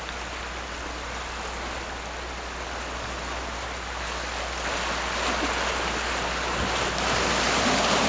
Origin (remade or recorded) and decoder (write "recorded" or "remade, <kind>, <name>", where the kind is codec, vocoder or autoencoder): recorded